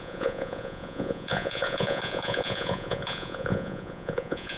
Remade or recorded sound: remade